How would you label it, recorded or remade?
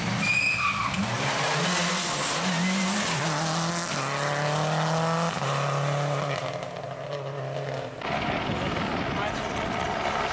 recorded